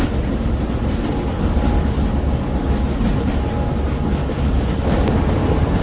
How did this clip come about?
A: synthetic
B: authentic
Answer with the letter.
B